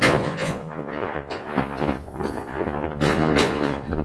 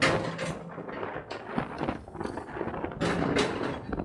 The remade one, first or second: first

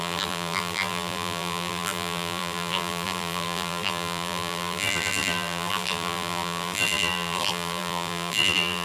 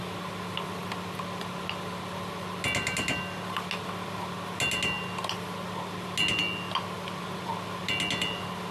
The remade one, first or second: first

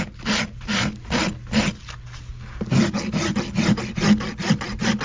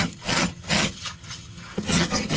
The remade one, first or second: second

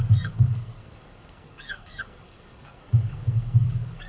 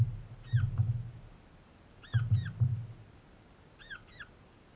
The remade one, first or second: first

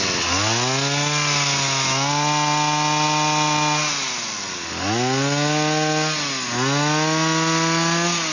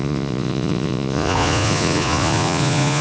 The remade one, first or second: second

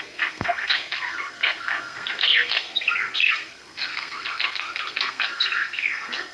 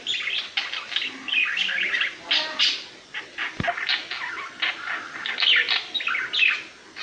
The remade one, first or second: first